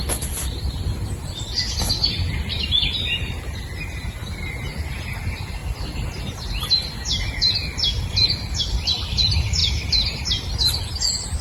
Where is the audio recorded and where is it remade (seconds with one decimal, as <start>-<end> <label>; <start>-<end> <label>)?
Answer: 0.0-11.4 recorded